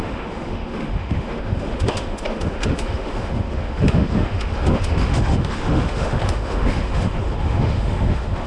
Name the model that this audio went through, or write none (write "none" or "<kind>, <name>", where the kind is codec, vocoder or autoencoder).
autoencoder, DAC-VAE